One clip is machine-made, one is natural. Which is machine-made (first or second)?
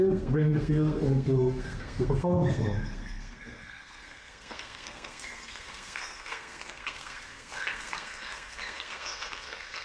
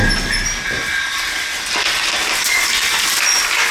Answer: first